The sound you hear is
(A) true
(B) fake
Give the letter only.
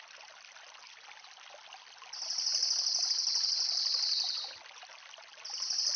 A